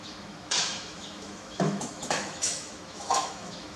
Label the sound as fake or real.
fake